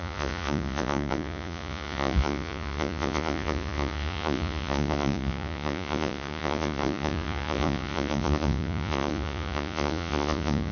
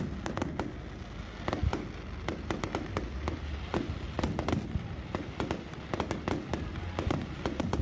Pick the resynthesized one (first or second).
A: first